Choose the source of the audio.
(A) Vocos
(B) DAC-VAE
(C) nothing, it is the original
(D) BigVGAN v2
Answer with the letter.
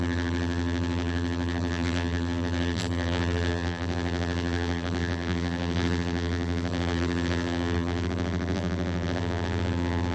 D